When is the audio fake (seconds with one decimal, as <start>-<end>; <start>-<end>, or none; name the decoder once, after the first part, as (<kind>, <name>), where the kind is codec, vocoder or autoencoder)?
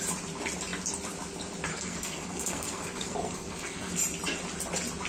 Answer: 1.7-3.9 (codec, SNAC)